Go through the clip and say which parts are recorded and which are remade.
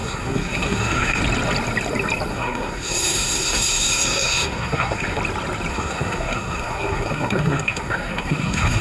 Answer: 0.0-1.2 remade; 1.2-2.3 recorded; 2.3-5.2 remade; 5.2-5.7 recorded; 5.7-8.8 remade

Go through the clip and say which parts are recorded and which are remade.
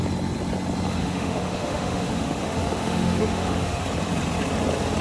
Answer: 0.0-1.0 recorded; 1.0-3.8 remade; 3.8-5.0 recorded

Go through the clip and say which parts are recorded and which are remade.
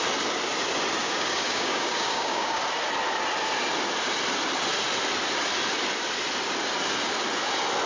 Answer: 0.0-1.0 recorded; 1.0-2.6 remade; 2.6-7.9 recorded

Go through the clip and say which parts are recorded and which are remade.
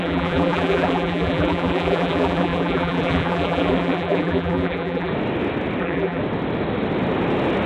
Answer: 0.0-5.1 remade; 5.1-5.8 recorded; 5.8-6.2 remade; 6.2-7.7 recorded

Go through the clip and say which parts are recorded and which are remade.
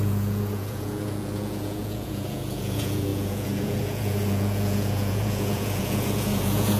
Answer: 0.0-6.8 remade